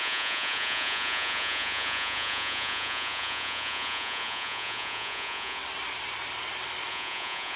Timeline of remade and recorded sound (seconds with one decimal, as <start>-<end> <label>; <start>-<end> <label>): 0.0-5.6 remade; 5.6-6.9 recorded; 6.9-7.6 remade